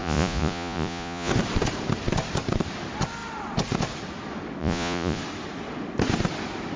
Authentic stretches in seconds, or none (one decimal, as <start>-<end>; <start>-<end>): 1.3-4.6; 5.2-6.8